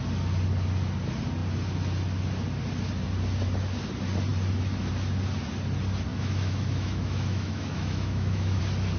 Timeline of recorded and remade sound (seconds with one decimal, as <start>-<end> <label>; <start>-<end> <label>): 0.0-6.1 recorded; 6.1-8.6 remade; 8.6-9.0 recorded